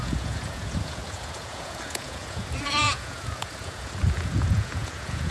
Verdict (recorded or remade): remade